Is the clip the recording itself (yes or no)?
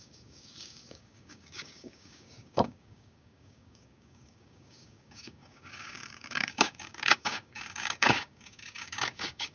no